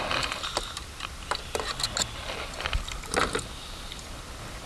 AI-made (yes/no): no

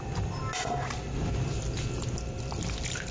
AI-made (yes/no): no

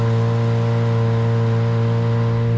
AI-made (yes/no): no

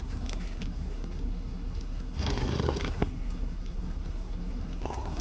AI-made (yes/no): yes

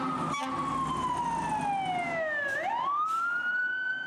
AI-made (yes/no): no